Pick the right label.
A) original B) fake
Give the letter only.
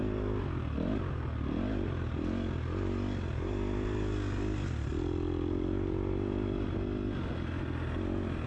A